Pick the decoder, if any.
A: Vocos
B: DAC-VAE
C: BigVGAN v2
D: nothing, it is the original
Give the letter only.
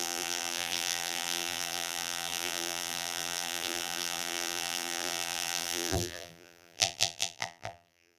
C